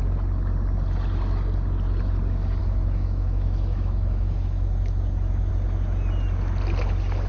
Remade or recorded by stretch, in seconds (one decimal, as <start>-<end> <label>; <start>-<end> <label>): 0.0-2.6 recorded; 2.6-5.5 remade; 5.5-7.3 recorded